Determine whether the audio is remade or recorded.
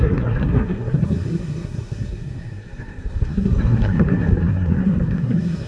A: remade